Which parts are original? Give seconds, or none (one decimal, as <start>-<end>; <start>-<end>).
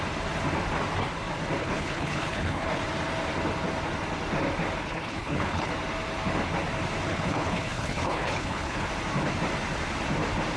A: 0.0-1.6; 2.8-4.8; 5.7-7.1; 8.9-10.6